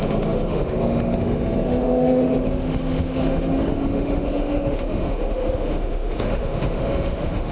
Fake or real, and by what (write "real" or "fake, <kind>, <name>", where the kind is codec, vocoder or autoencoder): fake, autoencoder, DAC-VAE